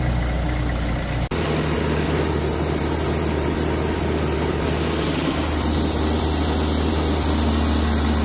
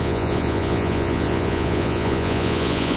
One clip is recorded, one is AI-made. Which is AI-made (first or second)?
second